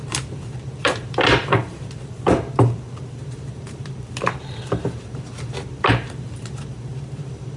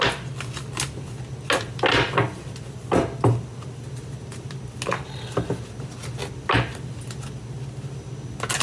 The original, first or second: second